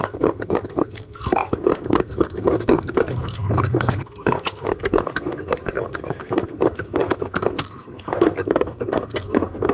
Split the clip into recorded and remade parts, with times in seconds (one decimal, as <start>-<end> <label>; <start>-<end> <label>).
0.0-9.7 remade